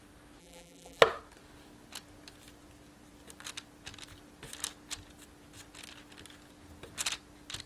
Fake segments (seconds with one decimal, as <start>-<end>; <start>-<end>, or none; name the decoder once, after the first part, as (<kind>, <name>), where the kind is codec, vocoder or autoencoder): 0.4-1.0 (vocoder, BigVGAN v2)